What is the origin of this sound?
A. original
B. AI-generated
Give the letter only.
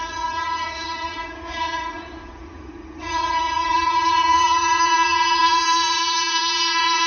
B